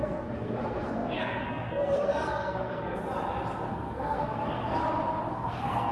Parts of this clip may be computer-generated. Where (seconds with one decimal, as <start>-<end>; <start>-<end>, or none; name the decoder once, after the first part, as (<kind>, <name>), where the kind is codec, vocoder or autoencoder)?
0.0-3.0 (codec, SNAC); 3.7-4.8; 5.3-5.9